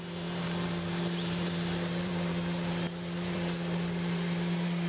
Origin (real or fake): fake